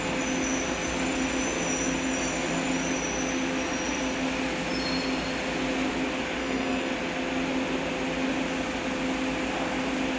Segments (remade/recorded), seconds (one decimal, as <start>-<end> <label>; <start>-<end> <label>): 0.0-6.4 recorded; 6.4-6.9 remade; 6.9-10.2 recorded